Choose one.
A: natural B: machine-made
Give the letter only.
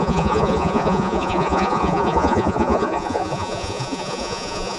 B